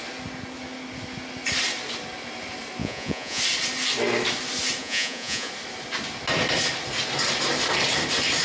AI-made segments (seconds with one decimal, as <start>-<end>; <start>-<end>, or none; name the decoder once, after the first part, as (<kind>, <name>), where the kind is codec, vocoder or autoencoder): 2.8-3.4 (vocoder, Vocos); 4.8-5.5